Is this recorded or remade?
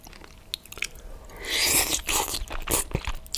recorded